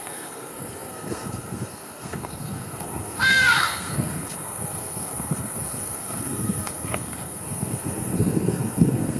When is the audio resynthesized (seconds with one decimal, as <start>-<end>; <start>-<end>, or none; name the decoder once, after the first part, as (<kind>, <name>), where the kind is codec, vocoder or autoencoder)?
0.0-9.2 (codec, SNAC)